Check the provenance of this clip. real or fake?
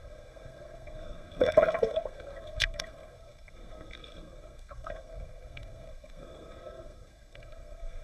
fake